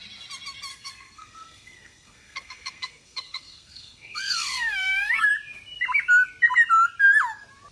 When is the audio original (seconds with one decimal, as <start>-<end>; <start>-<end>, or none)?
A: 0.0-0.7; 5.3-7.7